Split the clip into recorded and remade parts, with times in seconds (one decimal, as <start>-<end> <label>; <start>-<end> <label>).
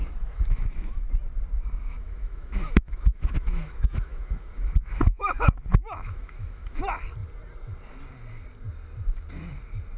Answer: 0.0-1.1 remade; 1.1-1.8 recorded; 1.8-6.8 remade; 6.8-10.0 recorded